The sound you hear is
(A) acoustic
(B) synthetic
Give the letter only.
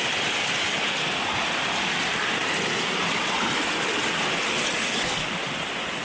A